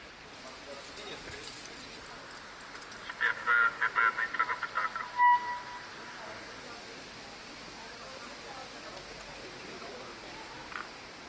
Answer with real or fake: real